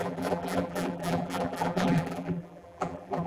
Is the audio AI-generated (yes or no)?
yes